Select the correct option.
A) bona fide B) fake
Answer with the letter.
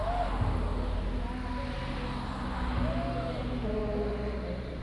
A